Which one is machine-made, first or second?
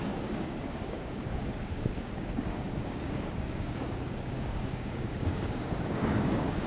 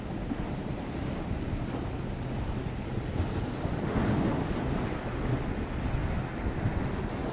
first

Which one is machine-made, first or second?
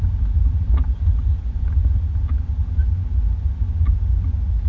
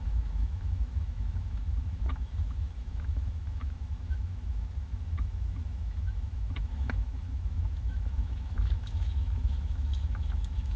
second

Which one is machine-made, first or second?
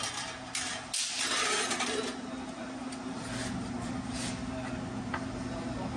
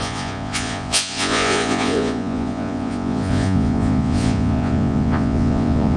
second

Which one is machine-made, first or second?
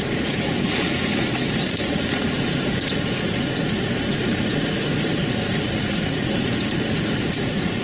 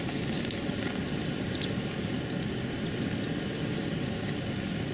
first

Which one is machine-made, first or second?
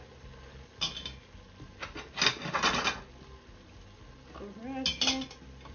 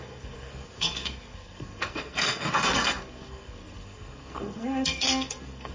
second